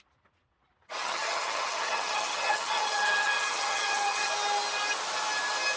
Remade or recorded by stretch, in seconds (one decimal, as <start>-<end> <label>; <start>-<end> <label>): 0.0-1.0 recorded; 1.0-4.3 remade; 4.3-5.8 recorded